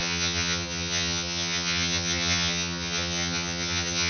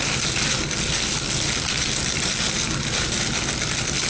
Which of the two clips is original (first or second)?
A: second